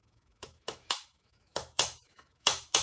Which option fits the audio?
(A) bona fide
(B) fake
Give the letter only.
B